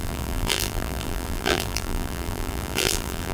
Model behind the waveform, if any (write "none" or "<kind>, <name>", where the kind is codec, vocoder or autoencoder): vocoder, BigVGAN v2